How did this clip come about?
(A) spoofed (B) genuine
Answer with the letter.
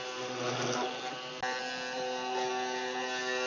B